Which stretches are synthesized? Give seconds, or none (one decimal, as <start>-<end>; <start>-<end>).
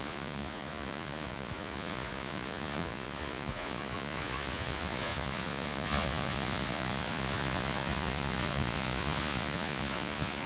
0.0-10.5